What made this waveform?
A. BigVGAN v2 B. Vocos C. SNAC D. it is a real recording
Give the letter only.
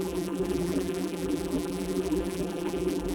A